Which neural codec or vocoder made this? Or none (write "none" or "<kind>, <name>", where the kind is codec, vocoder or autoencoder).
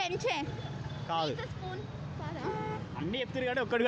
none